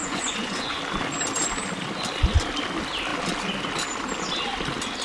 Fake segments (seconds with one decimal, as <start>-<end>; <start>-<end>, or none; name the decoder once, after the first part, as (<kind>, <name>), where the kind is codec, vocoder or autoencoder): 0.0-0.8 (vocoder, Vocos)